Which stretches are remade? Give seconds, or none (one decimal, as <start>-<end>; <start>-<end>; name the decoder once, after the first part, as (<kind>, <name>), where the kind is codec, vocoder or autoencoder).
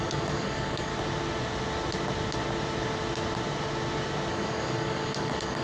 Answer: 0.0-0.9 (codec, DAC); 4.3-5.6